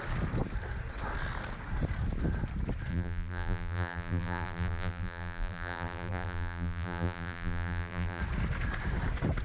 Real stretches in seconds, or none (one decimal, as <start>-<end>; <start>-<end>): 0.0-2.9; 8.2-9.4